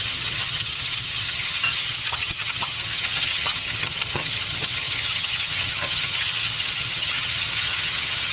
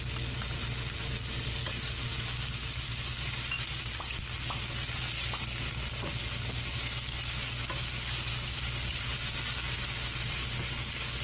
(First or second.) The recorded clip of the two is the second